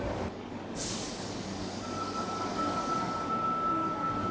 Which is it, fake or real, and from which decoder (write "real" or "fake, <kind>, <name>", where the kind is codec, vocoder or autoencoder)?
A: fake, codec, DAC